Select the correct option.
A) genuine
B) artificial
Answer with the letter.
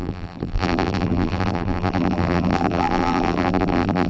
B